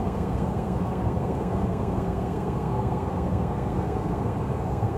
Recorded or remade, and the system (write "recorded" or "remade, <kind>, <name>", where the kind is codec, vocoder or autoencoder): remade, codec, SNAC